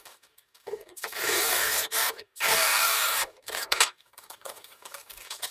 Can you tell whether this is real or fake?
fake